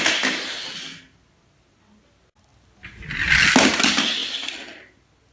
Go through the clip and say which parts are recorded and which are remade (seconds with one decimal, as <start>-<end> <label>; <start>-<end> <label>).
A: 0.0-5.3 recorded